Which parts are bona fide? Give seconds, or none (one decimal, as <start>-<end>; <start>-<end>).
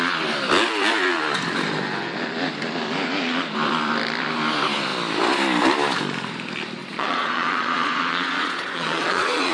0.0-6.8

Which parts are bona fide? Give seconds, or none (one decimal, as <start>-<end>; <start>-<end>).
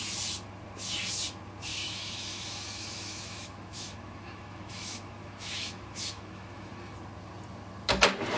0.0-1.7; 6.7-8.4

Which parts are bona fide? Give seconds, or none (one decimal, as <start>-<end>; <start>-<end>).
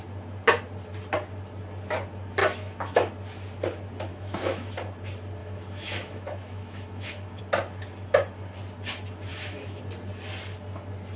0.0-2.4; 3.1-4.1; 4.7-5.4; 7.4-9.3; 9.8-11.2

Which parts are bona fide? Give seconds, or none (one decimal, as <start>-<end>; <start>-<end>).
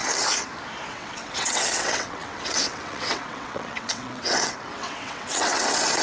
0.0-0.9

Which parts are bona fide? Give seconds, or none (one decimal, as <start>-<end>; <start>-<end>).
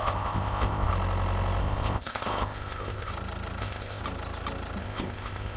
0.9-1.6; 3.1-3.6; 4.0-4.8